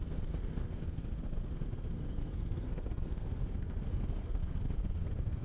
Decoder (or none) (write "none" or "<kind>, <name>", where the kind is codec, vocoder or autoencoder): codec, SNAC